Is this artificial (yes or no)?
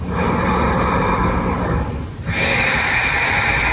no